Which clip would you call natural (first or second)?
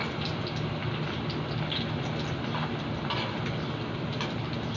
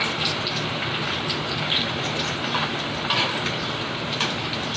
first